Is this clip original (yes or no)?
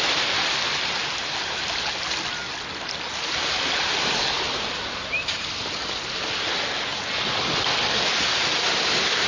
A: yes